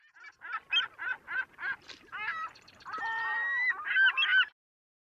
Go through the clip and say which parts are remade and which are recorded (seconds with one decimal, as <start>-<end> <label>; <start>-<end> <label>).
0.0-1.6 recorded; 1.6-3.4 remade; 3.4-5.1 recorded